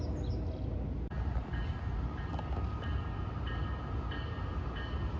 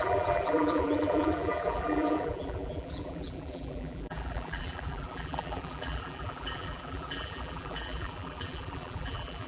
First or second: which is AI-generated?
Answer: second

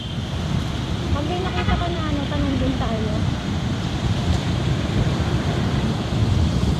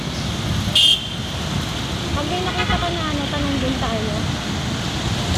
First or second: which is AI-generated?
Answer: first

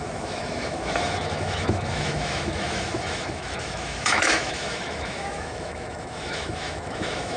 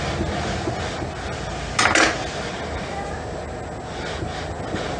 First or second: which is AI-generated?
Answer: first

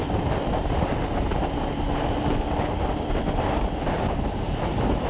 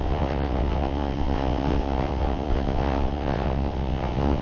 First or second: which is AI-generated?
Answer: second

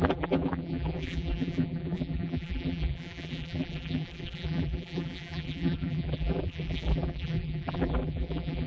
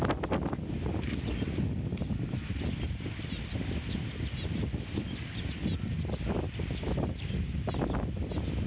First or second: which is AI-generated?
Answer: first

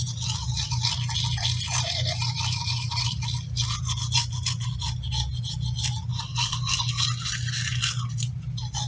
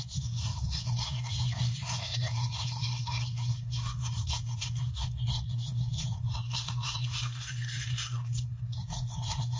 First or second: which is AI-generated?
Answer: second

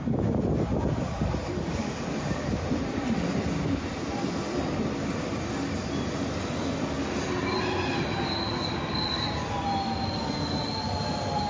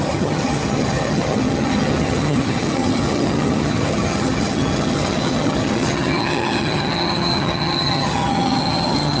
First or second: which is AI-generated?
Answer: second